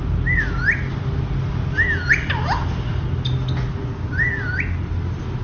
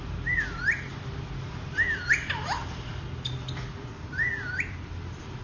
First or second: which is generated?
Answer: second